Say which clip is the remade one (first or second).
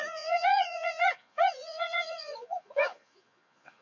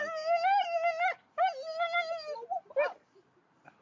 first